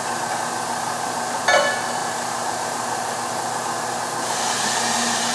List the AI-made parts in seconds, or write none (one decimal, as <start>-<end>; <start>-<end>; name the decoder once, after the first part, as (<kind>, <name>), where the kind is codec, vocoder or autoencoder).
2.0-2.8 (vocoder, BigVGAN v2)